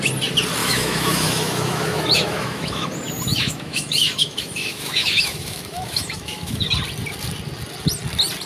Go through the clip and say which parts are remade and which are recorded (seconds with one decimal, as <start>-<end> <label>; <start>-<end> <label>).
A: 0.0-0.6 recorded; 0.6-2.9 remade; 2.9-3.3 recorded; 3.3-6.7 remade; 6.7-8.5 recorded